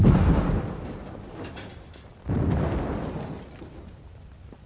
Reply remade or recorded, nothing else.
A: recorded